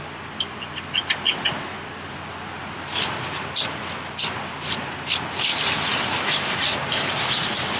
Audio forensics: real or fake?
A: real